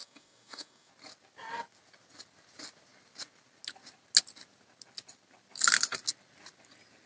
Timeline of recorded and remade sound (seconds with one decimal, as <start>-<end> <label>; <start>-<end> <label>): 0.0-0.9 remade; 0.9-7.1 recorded